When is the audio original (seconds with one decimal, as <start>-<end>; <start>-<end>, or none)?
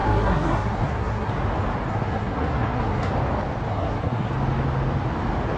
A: 1.3-1.9; 3.1-3.7; 4.3-5.6